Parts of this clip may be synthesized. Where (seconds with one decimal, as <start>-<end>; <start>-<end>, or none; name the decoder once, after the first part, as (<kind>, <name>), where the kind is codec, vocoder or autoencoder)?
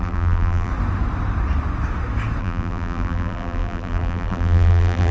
0.0-0.7 (vocoder, BigVGAN v2); 2.4-5.1